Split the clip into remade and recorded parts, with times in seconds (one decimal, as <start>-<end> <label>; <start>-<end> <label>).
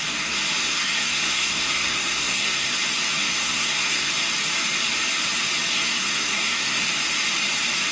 0.0-0.6 recorded; 0.6-2.7 remade; 2.7-3.3 recorded; 3.3-4.1 remade; 4.1-5.7 recorded; 5.7-6.9 remade; 6.9-7.9 recorded